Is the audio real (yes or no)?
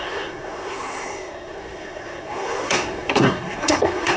no